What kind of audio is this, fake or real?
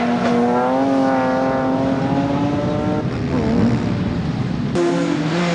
real